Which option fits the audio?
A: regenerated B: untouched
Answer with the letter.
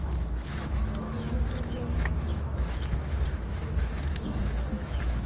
A